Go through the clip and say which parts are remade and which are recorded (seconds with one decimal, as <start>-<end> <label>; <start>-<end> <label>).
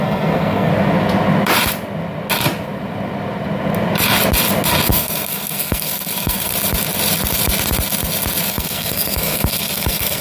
0.0-0.7 remade; 0.7-4.9 recorded; 4.9-6.5 remade; 6.5-8.5 recorded; 8.5-10.2 remade